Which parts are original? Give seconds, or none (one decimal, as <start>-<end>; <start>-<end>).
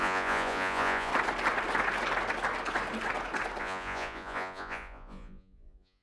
1.1-3.6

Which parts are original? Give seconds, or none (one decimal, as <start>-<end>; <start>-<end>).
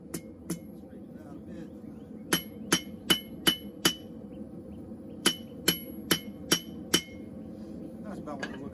0.0-0.6; 2.0-4.3; 5.6-8.7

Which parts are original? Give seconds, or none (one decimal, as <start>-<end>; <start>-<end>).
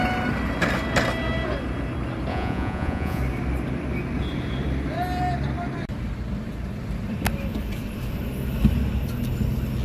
0.0-2.3; 3.2-9.8